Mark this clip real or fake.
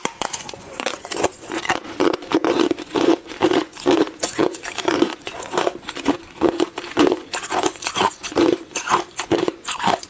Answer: fake